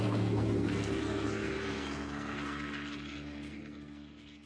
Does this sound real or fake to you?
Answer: fake